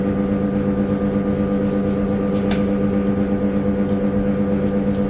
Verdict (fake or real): real